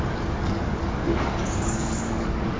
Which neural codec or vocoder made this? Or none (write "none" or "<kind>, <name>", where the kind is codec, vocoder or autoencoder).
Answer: codec, DAC